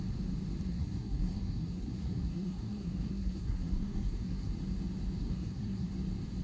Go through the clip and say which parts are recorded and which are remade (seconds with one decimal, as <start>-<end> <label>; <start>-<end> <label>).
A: 0.0-0.7 recorded; 0.7-4.5 remade; 4.5-5.2 recorded; 5.2-5.9 remade; 5.9-6.4 recorded